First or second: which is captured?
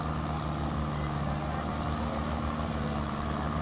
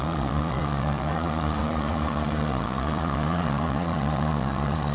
first